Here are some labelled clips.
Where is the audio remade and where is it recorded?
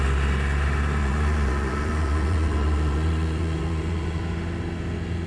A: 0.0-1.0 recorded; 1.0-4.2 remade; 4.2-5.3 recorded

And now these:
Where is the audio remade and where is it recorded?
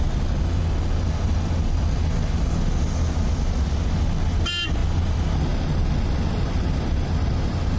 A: 0.0-7.8 recorded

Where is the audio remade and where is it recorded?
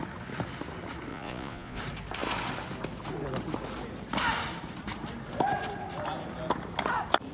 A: 0.0-1.1 recorded; 1.1-1.8 remade; 1.8-7.3 recorded